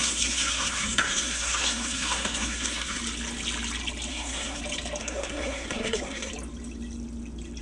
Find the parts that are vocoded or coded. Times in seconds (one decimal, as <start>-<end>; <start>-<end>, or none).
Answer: 0.0-3.0; 4.1-4.6; 5.0-6.3